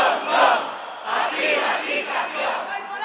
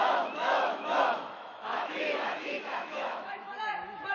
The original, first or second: first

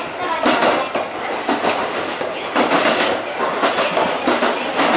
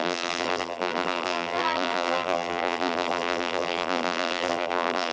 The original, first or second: first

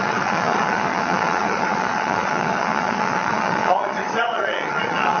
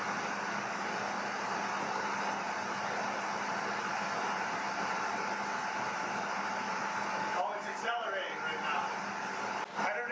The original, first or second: second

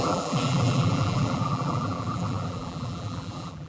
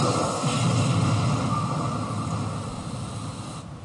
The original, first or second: second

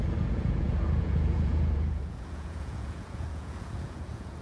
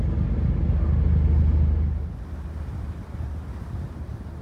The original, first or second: second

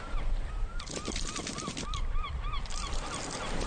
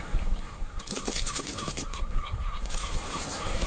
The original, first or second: first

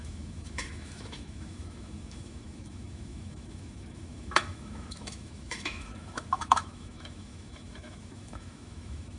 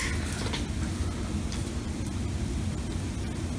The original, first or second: second